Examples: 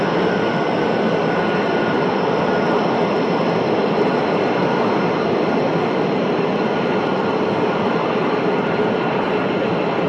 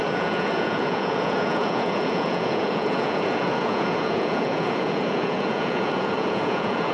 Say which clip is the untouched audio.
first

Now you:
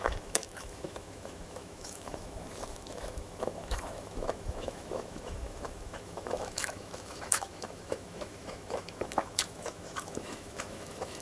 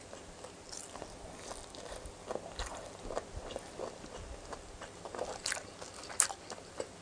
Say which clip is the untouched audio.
second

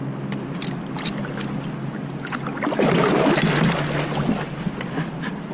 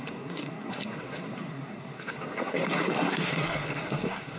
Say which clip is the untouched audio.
first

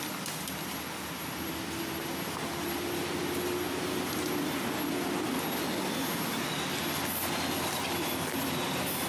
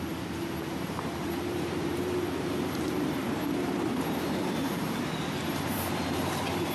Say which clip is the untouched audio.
first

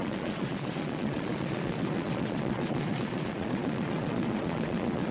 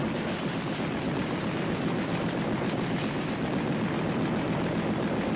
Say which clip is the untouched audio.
second